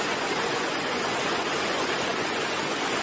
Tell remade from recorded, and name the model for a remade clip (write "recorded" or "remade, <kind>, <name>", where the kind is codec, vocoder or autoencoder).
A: remade, vocoder, Vocos